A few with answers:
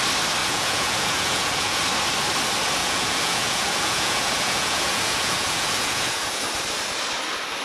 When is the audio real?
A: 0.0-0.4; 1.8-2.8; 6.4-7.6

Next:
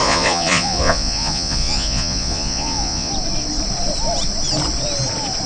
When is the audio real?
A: 3.1-5.5

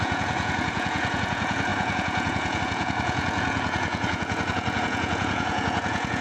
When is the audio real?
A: none

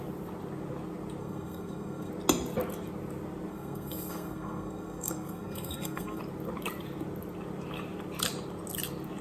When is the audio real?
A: 0.0-1.2; 2.1-3.5; 6.2-9.2

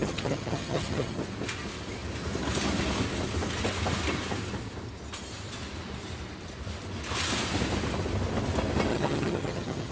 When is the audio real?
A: 1.2-8.9

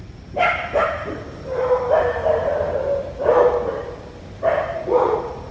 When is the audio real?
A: 0.0-4.7

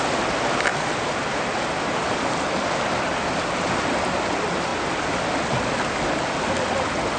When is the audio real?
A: 0.0-7.2